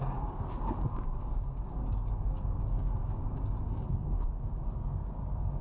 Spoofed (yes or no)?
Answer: yes